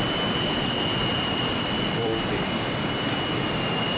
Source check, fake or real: fake